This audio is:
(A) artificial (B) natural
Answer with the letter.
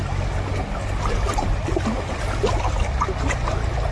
B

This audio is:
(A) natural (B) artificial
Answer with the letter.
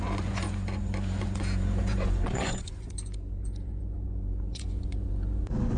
B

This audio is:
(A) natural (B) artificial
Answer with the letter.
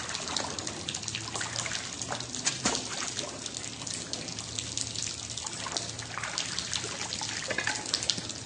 A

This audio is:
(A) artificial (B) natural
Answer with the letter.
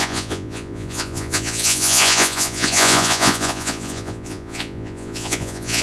A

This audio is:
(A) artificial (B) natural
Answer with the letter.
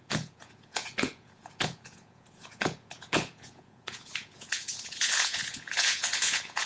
A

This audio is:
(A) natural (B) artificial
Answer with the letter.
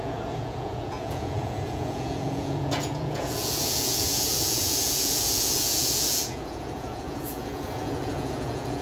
B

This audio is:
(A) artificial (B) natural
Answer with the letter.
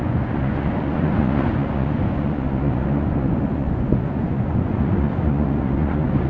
A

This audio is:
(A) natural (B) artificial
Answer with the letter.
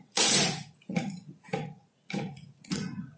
B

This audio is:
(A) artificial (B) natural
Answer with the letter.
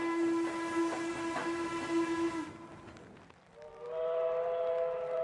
B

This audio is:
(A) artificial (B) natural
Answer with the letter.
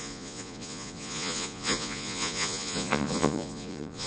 A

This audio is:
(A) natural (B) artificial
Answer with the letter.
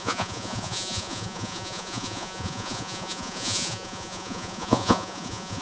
B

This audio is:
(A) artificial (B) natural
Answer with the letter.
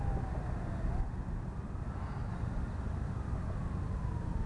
B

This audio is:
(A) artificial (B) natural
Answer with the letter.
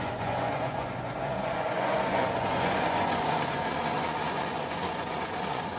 A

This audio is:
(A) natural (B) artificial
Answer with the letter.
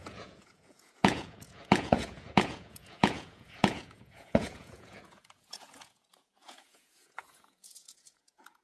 B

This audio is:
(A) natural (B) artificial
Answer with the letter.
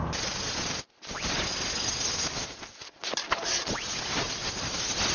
A